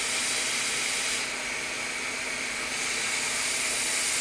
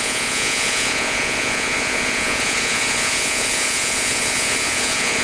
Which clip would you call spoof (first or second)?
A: second